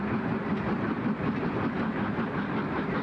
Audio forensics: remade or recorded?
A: recorded